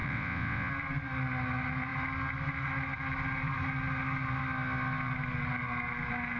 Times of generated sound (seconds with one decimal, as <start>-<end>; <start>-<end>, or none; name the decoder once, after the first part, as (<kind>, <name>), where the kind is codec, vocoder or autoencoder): 0.0-0.7 (vocoder, WaveNeXt)